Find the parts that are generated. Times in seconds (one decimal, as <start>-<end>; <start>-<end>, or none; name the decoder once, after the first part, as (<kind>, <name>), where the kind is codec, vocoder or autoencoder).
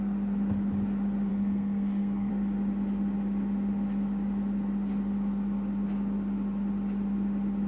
1.3-2.3 (codec, SNAC)